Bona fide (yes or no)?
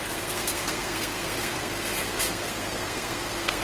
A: no